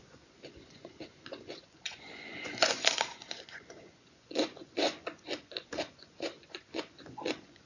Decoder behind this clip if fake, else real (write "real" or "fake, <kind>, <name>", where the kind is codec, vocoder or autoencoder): fake, vocoder, Vocos